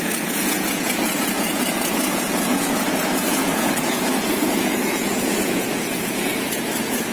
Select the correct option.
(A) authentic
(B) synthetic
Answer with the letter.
B